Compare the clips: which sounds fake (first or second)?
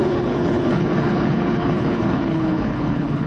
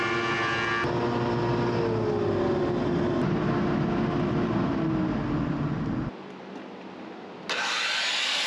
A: first